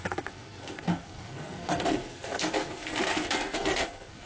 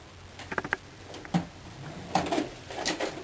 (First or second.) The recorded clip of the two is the second